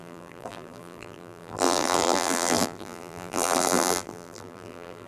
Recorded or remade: remade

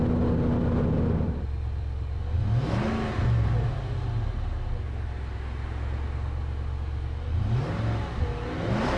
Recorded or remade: recorded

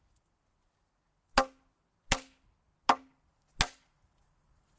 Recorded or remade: recorded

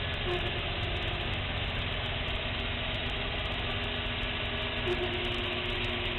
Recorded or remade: recorded